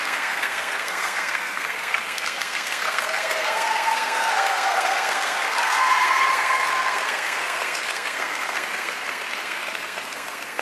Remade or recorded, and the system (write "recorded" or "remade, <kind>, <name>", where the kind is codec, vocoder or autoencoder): remade, codec, SNAC